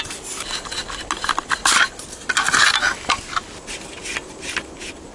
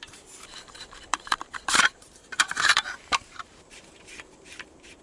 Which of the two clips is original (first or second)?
first